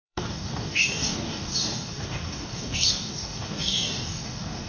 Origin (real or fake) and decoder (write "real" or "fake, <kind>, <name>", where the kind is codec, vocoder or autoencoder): fake, codec, DAC